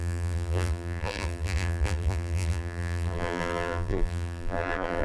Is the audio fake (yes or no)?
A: yes